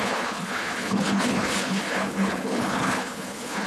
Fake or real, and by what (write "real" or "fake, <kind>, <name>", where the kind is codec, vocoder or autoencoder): fake, codec, HILCodec